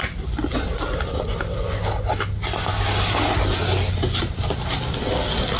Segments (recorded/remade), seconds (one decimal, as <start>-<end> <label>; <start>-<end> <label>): 0.0-5.6 recorded